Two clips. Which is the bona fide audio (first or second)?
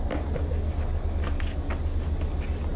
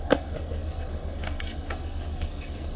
first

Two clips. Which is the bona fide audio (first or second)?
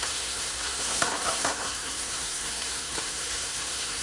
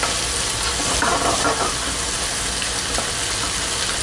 second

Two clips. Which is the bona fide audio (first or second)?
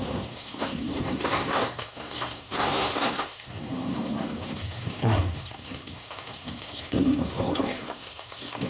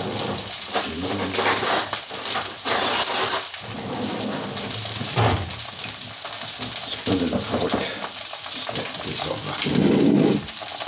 second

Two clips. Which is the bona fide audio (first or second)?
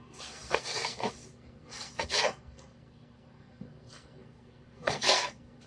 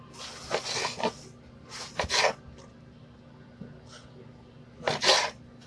second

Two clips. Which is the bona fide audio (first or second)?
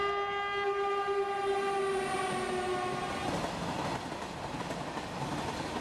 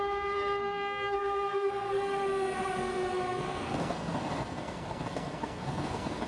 first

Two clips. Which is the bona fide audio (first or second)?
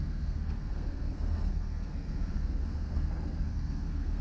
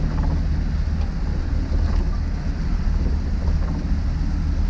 second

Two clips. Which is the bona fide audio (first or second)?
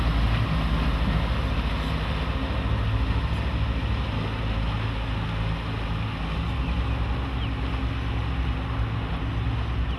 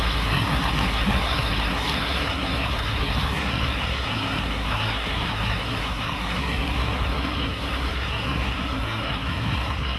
first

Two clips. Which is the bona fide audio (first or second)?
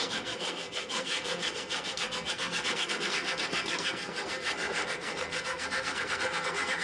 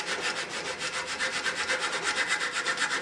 second